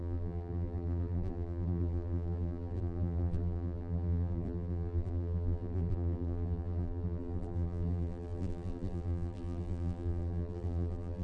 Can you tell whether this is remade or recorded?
remade